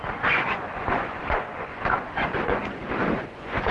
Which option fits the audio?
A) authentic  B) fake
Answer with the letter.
B